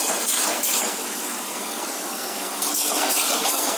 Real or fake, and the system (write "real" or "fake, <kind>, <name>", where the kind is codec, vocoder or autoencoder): fake, codec, SNAC